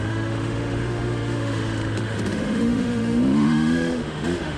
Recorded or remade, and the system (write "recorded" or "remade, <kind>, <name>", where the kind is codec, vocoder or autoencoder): remade, autoencoder, DAC-VAE